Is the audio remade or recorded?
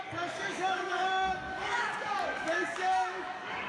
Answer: remade